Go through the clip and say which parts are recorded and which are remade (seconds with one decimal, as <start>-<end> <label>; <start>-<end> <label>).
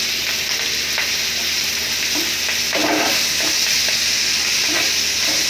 0.0-5.5 recorded